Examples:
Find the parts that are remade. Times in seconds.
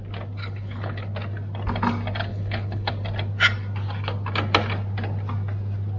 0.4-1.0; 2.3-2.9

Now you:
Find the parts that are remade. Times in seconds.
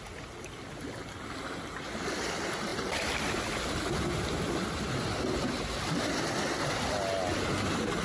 none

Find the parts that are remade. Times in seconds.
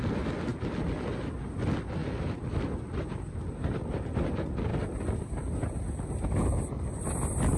none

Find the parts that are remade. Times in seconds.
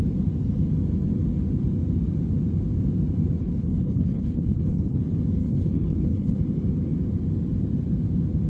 3.4-5.0; 5.4-6.4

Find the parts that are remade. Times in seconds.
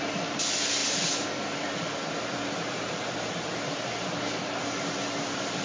none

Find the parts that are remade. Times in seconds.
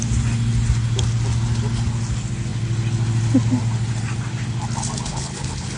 5.1-5.8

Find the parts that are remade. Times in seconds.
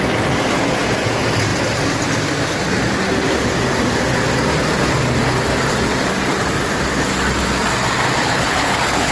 8.2-9.1